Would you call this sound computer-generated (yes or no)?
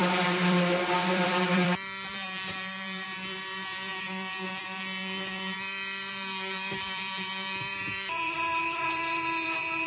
yes